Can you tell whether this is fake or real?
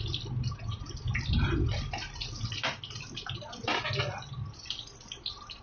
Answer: real